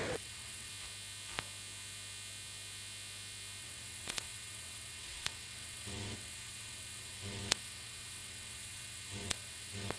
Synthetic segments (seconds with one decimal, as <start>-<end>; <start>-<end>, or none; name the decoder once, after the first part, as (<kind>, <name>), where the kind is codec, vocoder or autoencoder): 0.0-0.7 (vocoder, WaveNeXt); 3.6-10.0